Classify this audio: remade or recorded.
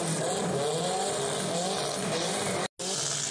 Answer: recorded